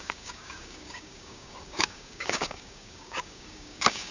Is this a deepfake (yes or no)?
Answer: yes